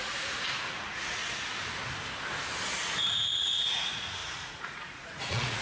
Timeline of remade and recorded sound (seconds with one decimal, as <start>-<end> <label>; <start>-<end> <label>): 0.0-1.2 remade; 1.2-3.1 recorded; 3.1-5.6 remade